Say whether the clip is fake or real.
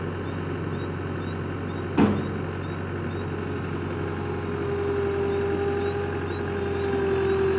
real